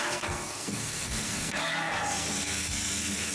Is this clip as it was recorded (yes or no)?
no